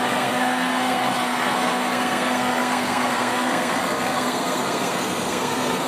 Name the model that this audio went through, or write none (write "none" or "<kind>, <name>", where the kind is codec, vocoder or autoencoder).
codec, SNAC